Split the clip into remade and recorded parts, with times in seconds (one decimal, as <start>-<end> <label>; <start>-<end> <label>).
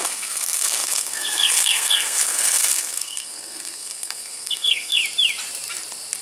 0.0-5.0 remade; 5.0-6.2 recorded